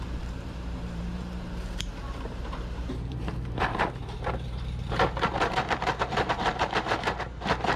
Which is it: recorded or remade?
remade